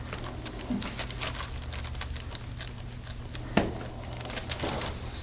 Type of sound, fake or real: real